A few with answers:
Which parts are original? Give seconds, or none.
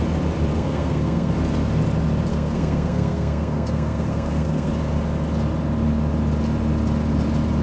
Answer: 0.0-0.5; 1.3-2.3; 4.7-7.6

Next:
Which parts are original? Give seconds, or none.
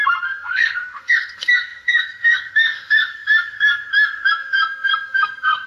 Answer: none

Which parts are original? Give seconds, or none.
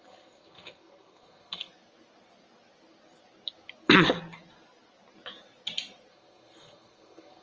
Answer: 1.7-6.1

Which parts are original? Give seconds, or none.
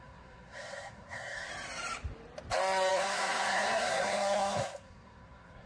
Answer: 1.5-2.9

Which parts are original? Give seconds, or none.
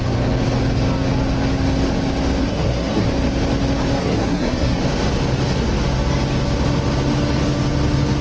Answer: 0.0-2.4; 3.1-4.0; 4.8-8.2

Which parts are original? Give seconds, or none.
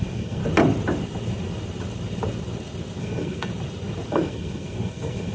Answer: 0.4-3.0; 3.5-4.1